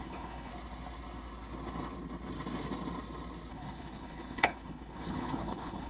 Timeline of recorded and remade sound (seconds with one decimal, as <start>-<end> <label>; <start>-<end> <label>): 0.0-0.5 remade; 0.5-3.5 recorded; 3.5-5.9 remade